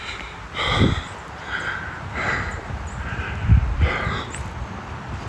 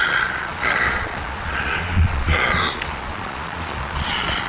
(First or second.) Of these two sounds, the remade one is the second